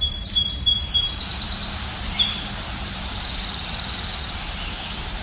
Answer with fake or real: fake